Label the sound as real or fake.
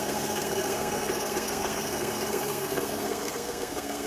fake